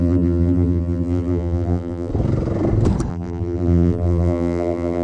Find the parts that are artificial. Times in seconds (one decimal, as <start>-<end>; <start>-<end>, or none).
0.0-2.1; 3.1-5.0